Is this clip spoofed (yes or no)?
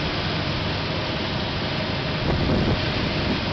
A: no